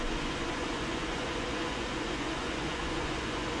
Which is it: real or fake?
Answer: fake